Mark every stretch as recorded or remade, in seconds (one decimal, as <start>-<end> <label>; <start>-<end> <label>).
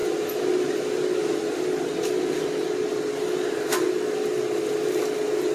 0.0-5.5 recorded